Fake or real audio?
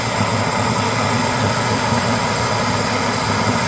real